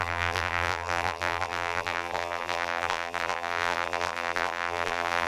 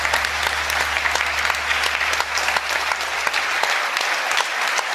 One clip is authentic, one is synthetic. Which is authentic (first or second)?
second